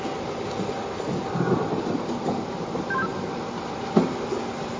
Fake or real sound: real